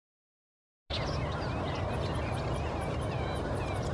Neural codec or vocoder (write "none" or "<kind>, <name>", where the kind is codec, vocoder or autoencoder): none